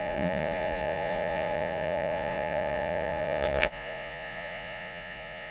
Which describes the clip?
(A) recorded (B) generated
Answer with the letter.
B